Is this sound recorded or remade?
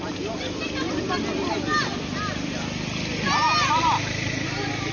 recorded